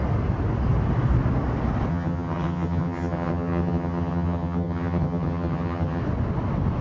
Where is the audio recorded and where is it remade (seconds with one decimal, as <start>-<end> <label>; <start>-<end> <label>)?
0.0-1.9 recorded; 1.9-6.0 remade; 6.0-6.8 recorded

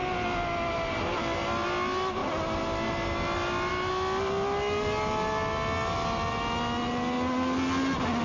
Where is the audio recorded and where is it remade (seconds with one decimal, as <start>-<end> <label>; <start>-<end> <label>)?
0.0-8.2 recorded